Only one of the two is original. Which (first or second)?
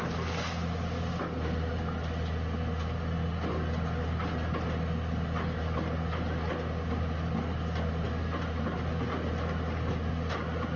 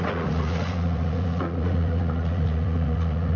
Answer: first